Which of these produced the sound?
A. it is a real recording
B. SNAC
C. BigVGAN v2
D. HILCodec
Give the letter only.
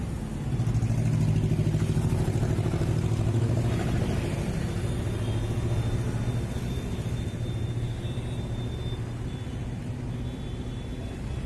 A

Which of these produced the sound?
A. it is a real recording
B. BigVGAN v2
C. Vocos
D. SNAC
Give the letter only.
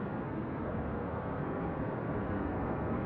D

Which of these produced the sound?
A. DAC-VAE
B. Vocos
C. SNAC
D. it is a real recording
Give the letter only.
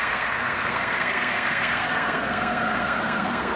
C